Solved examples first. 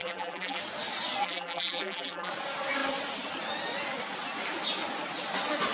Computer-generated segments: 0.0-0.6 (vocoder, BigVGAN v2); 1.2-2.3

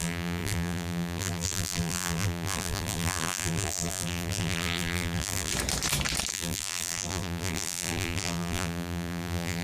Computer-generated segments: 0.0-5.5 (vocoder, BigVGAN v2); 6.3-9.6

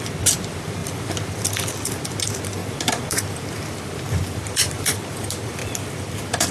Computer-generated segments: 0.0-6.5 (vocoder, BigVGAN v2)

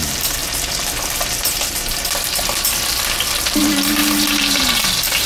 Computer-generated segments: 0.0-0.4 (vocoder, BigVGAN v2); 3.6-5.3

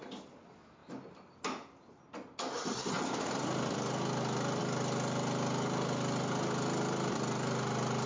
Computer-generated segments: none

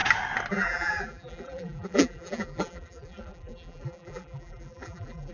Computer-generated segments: 0.5-5.3 (vocoder, BigVGAN v2)

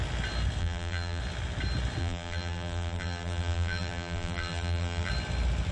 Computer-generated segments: 0.6-1.2 (vocoder, BigVGAN v2); 2.0-5.1

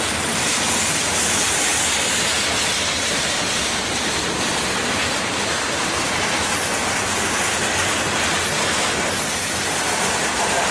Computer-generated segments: none